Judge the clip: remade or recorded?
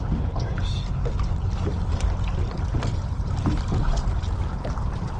recorded